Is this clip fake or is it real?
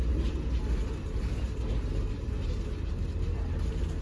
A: real